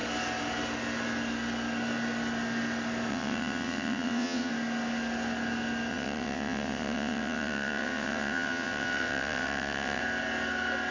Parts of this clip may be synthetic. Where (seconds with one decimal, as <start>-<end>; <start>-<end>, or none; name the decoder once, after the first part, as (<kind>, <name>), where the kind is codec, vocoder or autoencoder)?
3.1-4.5 (vocoder, WaveNeXt); 5.9-10.0